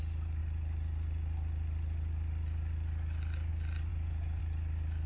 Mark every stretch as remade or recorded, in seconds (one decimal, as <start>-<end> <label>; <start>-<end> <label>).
0.0-3.9 recorded; 3.9-4.4 remade; 4.4-5.1 recorded